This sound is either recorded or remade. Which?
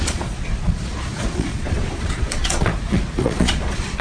remade